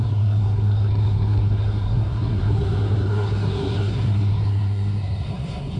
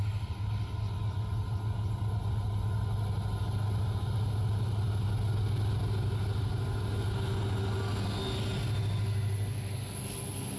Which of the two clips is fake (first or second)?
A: first